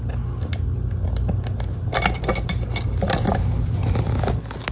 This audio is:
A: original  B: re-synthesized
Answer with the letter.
A